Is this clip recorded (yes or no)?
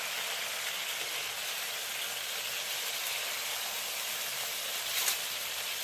yes